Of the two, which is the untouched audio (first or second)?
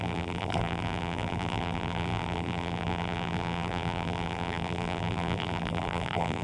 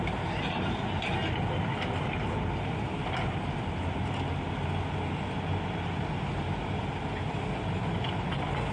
second